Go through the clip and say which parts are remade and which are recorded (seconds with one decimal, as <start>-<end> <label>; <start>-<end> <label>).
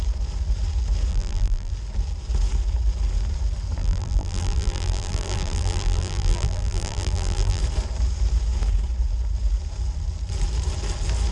0.0-1.1 recorded; 1.1-1.7 remade; 1.7-3.8 recorded; 3.8-7.6 remade; 7.6-11.3 recorded